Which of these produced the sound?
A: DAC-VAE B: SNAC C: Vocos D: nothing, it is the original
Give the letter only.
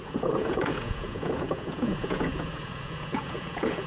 C